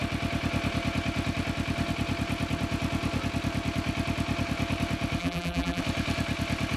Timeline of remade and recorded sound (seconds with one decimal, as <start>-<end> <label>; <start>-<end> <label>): 0.0-5.2 recorded; 5.2-5.8 remade; 5.8-6.8 recorded